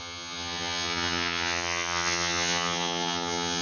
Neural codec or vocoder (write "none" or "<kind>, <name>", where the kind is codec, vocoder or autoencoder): vocoder, HiFi-GAN